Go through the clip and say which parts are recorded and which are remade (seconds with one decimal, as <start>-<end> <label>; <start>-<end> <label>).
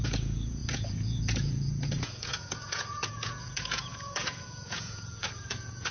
0.0-5.9 remade